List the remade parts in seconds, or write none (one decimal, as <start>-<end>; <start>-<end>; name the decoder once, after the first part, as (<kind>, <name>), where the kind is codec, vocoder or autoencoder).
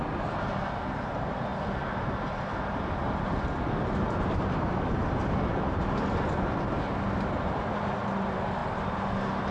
none